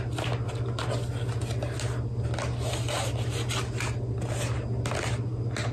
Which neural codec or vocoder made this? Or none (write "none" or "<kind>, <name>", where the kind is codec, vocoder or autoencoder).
none